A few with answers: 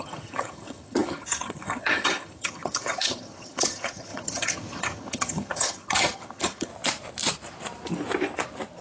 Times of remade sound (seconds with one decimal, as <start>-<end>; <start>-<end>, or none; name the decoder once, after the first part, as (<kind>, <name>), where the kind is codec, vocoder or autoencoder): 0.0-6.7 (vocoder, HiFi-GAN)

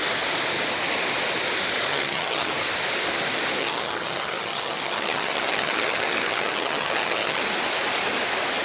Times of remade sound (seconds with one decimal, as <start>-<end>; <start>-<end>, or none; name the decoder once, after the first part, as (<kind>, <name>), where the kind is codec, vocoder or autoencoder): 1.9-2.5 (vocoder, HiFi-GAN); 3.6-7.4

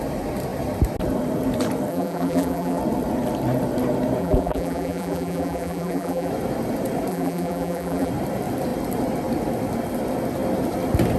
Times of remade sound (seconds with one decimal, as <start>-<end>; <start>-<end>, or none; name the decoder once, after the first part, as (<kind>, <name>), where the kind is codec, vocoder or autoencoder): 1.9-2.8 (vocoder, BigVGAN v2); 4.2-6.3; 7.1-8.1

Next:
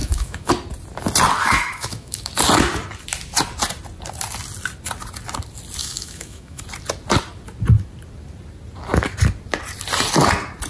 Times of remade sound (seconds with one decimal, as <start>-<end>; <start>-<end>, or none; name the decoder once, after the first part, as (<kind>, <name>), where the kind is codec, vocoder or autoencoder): 0.0-0.5 (autoencoder, DAC-VAE); 1.4-2.3; 5.8-6.6

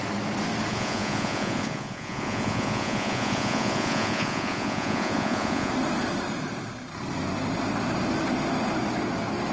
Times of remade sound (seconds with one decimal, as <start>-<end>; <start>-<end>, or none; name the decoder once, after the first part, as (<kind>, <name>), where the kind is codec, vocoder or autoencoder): 0.7-5.7 (vocoder, Vocos)

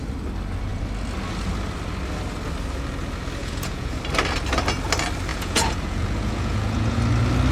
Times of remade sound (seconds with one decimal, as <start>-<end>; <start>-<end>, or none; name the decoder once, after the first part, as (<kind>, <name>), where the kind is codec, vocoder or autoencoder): 3.4-4.0 (vocoder, Vocos); 5.3-7.0

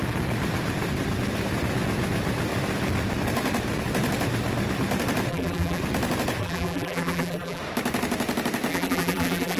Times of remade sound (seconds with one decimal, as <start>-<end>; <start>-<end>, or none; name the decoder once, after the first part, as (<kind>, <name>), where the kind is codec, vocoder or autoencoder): 5.3-5.8 (vocoder, BigVGAN v2); 6.4-7.6; 8.7-9.6